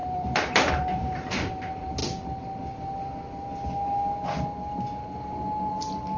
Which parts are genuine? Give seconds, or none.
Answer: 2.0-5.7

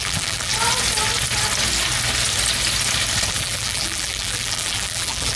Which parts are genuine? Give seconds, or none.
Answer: 0.5-3.3

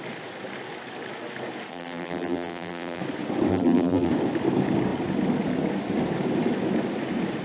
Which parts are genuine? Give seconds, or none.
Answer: 0.0-1.7; 3.0-3.5; 4.1-7.4

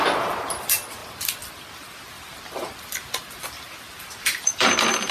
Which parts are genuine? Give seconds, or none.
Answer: 0.0-5.1

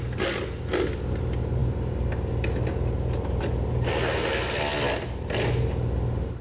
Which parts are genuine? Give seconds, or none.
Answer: 0.0-6.4

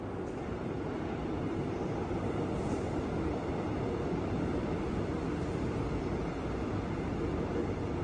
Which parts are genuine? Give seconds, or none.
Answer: 0.0-1.2; 3.5-8.0

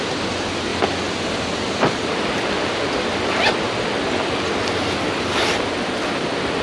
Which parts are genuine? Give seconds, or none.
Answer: 0.0-6.6